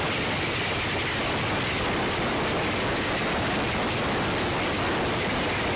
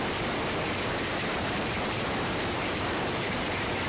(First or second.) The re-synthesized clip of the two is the second